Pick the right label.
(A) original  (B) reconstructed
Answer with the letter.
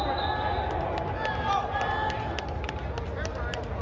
A